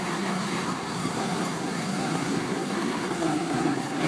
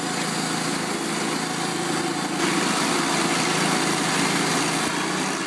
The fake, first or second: first